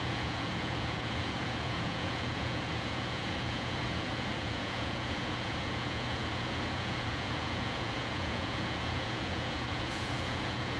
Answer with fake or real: fake